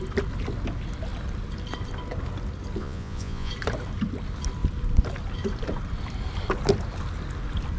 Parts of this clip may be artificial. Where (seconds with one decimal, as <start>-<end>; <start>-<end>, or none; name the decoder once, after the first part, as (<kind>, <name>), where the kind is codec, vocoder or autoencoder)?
2.8-3.5 (vocoder, Vocos)